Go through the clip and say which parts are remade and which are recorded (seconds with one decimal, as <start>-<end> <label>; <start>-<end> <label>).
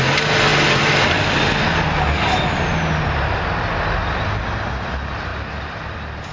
0.0-6.3 recorded